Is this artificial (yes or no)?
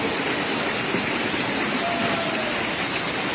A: no